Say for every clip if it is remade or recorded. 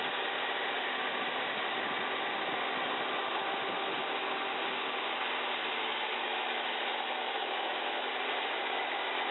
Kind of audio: recorded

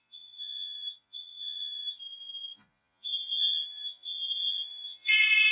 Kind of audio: remade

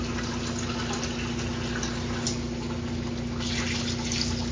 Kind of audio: recorded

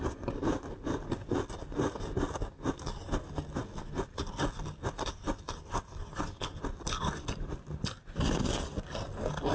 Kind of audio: recorded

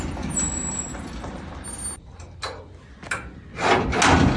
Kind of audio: recorded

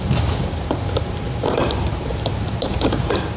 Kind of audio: remade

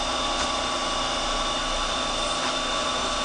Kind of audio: recorded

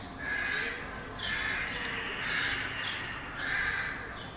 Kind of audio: recorded